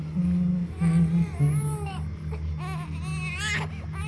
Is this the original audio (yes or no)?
yes